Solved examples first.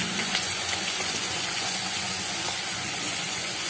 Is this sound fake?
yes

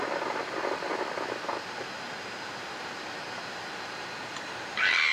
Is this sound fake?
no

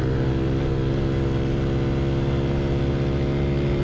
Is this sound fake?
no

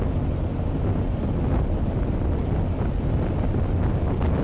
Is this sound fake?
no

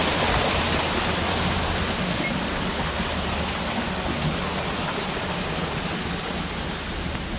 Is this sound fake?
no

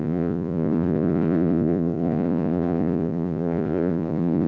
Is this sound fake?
yes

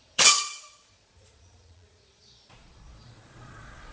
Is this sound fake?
yes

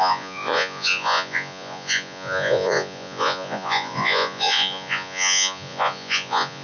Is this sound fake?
yes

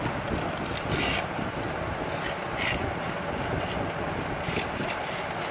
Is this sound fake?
no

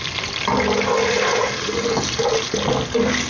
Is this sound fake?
no